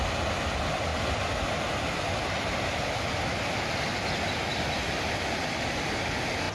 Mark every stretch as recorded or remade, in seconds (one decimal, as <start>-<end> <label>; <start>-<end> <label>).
0.0-0.9 recorded; 0.9-3.7 remade; 3.7-4.5 recorded; 4.5-5.4 remade; 5.4-6.5 recorded